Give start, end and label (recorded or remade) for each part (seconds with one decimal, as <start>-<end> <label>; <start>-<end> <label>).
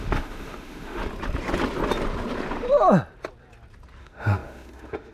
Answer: 0.0-1.0 remade; 1.0-4.0 recorded; 4.0-5.1 remade